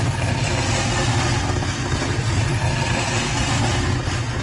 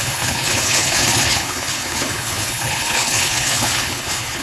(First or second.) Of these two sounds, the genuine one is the first